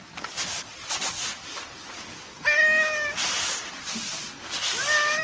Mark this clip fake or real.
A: real